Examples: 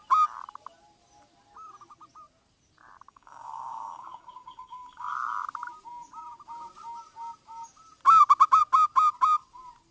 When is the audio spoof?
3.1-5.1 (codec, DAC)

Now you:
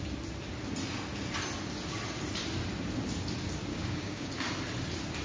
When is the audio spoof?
3.7-4.3 (codec, DAC)